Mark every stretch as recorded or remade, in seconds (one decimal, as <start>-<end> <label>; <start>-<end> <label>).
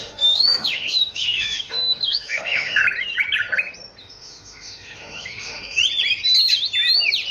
0.0-2.8 remade; 2.8-4.0 recorded; 4.0-5.8 remade; 5.8-7.3 recorded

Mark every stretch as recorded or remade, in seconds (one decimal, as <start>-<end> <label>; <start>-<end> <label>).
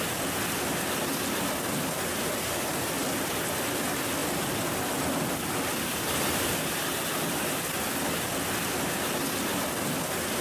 0.0-10.4 recorded